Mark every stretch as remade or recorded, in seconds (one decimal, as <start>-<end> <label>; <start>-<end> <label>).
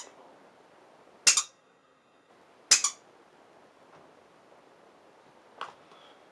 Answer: 0.0-1.4 recorded; 1.4-2.3 remade; 2.3-6.3 recorded